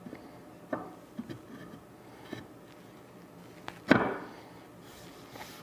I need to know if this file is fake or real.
real